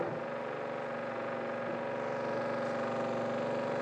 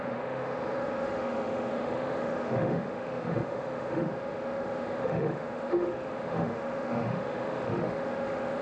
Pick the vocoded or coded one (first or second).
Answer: second